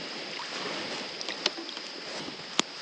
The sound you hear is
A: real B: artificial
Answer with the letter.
A